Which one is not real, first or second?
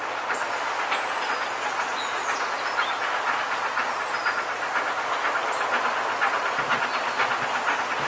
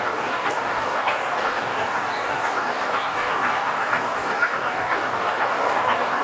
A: second